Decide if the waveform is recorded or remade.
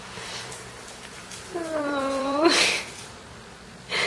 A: remade